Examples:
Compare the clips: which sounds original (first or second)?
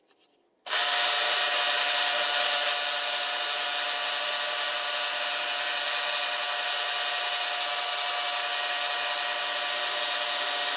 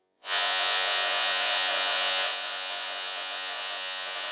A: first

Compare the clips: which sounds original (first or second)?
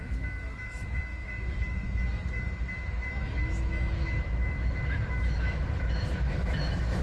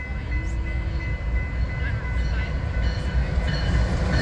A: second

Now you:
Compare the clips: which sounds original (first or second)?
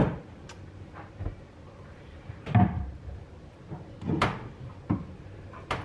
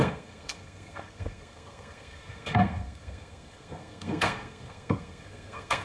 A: first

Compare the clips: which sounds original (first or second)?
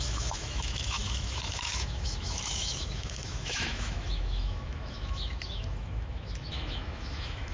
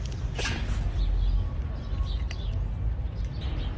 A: second